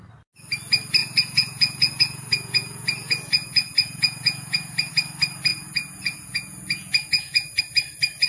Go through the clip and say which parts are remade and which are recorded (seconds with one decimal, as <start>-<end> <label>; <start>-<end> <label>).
0.0-1.0 recorded; 1.0-4.9 remade; 4.9-5.5 recorded; 5.5-7.6 remade; 7.6-8.3 recorded